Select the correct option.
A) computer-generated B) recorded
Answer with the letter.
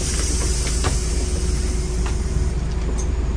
B